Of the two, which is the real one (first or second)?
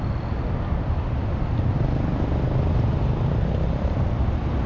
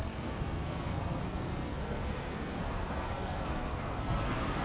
first